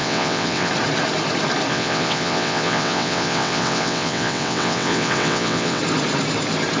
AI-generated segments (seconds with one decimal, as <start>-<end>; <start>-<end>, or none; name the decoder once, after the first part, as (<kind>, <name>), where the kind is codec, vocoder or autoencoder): 0.0-0.7 (vocoder, WaveNeXt); 1.7-5.8